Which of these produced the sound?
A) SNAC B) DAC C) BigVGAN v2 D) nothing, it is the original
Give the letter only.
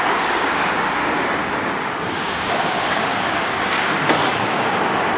B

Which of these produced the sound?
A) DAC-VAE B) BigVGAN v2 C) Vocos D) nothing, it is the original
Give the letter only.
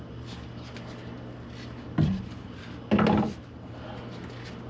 D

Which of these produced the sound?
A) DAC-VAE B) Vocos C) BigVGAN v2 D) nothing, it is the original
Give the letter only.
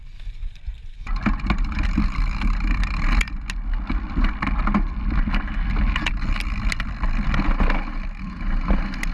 D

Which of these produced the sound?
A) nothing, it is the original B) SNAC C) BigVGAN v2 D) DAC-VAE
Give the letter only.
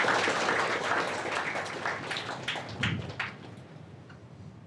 A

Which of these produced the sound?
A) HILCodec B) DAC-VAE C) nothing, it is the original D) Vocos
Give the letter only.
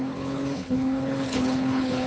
A